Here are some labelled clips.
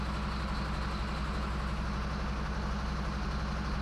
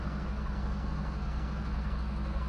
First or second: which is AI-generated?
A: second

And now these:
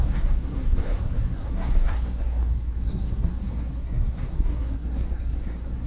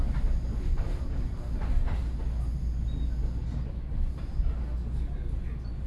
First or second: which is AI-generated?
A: first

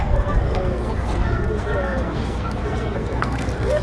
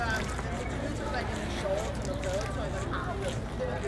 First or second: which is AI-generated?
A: first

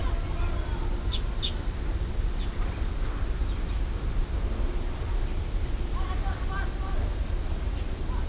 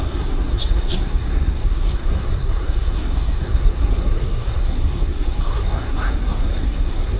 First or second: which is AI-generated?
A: second